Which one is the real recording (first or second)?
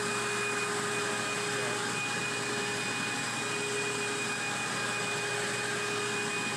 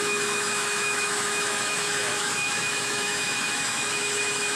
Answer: first